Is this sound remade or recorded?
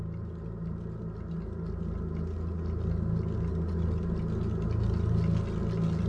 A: recorded